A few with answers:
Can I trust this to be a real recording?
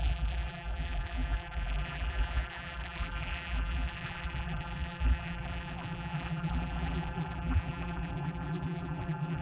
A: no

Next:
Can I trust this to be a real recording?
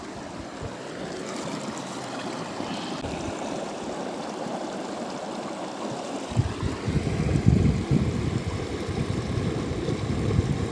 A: yes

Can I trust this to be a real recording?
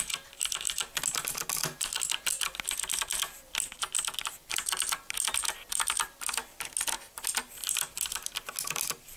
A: yes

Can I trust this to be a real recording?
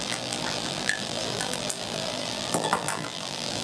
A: no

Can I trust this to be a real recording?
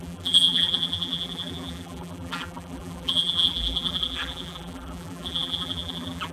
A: no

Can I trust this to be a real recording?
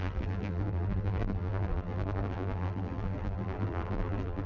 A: no